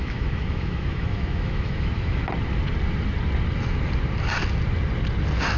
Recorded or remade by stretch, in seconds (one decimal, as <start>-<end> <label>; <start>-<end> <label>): 0.0-2.2 remade; 2.2-5.6 recorded